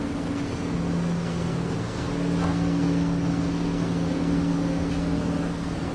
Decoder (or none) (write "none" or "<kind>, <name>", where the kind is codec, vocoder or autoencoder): codec, SNAC